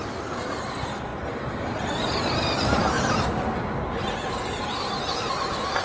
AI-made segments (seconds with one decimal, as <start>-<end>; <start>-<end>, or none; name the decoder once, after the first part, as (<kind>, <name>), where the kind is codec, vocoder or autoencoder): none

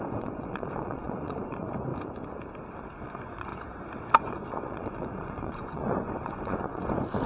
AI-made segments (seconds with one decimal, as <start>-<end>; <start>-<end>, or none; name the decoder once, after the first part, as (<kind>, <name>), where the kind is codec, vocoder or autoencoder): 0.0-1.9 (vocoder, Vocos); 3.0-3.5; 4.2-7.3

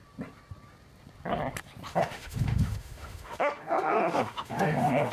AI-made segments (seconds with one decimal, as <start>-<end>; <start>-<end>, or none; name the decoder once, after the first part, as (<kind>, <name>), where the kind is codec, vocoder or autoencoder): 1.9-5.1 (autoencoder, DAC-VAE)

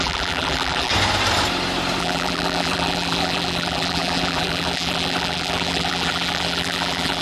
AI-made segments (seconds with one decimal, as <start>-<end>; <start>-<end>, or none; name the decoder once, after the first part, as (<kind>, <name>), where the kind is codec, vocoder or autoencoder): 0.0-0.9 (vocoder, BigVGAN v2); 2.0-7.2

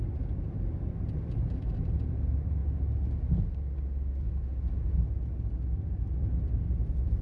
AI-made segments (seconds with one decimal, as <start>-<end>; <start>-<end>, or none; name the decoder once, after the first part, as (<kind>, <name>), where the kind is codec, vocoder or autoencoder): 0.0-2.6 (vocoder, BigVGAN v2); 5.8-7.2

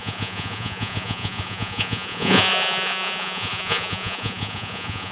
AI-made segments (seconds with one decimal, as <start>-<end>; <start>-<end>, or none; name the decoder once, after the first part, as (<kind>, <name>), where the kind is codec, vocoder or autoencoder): 0.0-5.1 (vocoder, Vocos)

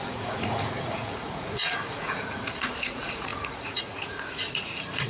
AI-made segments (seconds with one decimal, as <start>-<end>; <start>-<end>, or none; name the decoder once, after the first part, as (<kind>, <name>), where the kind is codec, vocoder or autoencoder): 0.0-5.1 (vocoder, Vocos)

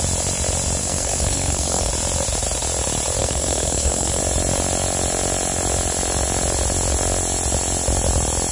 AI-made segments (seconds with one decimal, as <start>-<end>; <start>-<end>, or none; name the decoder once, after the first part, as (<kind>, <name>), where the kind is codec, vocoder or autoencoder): 0.8-1.9 (codec, SNAC); 3.2-4.2